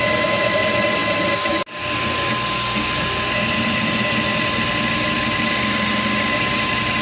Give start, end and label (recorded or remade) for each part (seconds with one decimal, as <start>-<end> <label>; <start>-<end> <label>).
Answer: 0.0-7.0 recorded